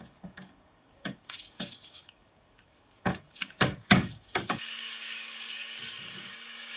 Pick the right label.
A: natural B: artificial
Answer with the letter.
B